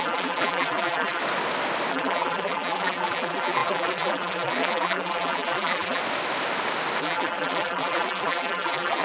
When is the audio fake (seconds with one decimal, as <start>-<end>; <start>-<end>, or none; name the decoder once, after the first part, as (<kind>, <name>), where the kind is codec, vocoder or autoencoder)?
0.0-1.2 (vocoder, BigVGAN v2); 1.9-6.0; 7.0-9.0